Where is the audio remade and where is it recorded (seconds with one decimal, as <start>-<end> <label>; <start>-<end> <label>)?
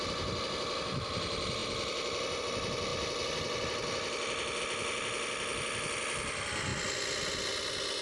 0.0-8.0 recorded